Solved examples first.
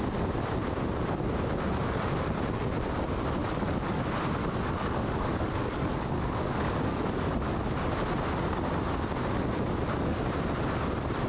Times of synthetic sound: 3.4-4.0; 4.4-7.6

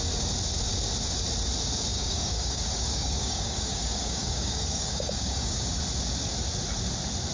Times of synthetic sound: 1.9-5.8

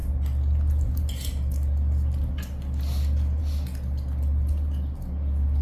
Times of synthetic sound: none

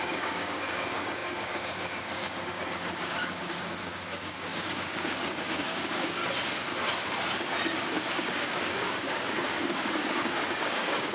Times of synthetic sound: 0.0-6.2; 8.1-11.1